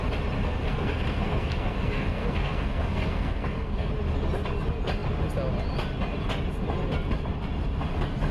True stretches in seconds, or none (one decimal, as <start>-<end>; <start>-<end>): 0.0-0.6; 3.9-8.3